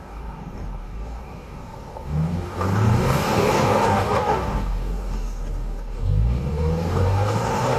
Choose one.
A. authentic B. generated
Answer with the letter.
B